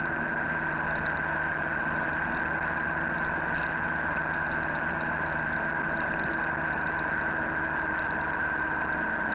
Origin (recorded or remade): recorded